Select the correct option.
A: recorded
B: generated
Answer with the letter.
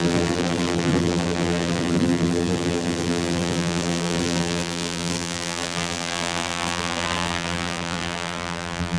B